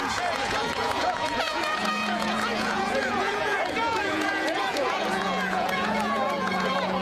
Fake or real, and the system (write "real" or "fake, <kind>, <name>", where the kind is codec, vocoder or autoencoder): fake, vocoder, Vocos